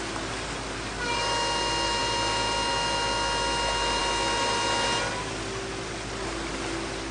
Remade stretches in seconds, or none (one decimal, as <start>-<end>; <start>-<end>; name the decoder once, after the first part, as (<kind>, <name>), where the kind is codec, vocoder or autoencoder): none